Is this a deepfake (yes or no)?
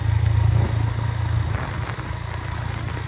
no